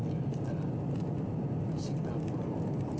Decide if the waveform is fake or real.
real